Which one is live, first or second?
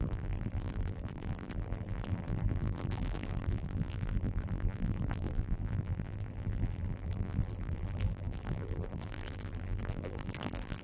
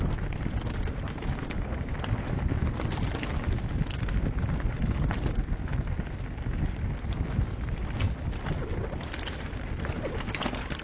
second